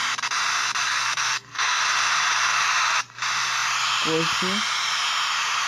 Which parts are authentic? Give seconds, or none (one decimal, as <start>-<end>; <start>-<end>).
0.0-0.9; 1.8-5.7